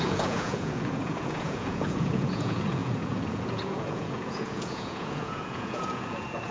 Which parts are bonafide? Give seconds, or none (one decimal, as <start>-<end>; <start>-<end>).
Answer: none